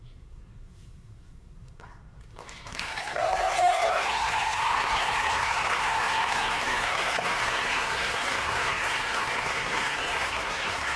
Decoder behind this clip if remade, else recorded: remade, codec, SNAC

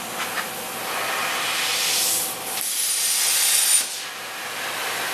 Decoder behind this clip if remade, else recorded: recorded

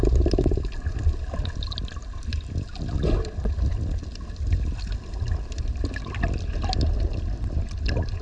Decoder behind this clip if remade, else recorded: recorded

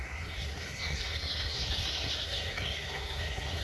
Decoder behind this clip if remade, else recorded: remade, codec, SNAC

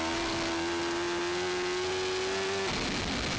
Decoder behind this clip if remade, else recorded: recorded